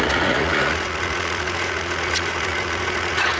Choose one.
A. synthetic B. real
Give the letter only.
A